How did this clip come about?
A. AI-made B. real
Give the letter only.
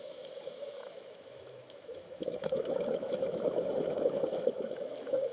A